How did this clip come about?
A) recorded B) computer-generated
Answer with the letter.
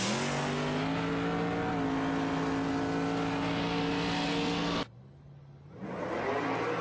A